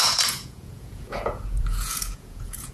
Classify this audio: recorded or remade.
remade